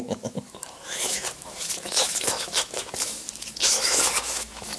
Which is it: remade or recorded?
remade